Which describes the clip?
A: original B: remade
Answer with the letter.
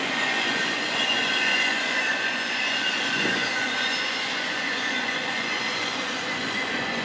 B